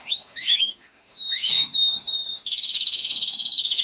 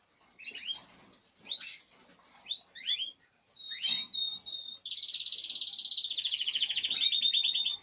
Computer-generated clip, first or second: first